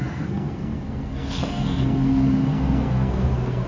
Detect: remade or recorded remade